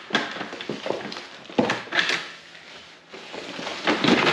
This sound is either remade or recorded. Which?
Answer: recorded